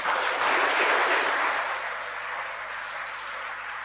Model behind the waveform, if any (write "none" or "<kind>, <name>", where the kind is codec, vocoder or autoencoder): none